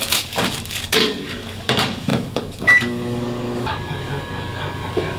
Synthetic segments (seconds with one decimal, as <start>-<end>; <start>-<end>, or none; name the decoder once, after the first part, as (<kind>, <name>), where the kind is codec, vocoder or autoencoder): 0.0-5.2 (codec, DAC)